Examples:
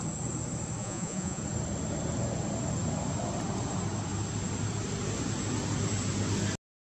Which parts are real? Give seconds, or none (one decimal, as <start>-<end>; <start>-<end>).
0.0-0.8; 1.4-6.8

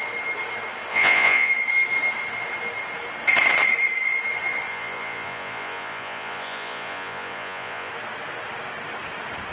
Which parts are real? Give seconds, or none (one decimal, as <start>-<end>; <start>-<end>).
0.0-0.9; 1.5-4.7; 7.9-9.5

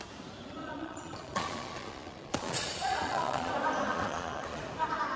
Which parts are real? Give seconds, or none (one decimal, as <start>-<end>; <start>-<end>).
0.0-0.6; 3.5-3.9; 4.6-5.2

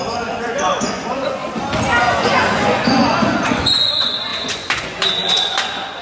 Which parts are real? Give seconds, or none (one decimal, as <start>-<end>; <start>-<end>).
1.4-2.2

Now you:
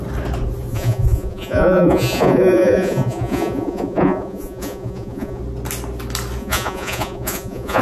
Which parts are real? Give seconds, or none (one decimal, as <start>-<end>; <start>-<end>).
0.0-0.7; 5.4-6.4